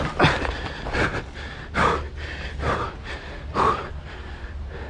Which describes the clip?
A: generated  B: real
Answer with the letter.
B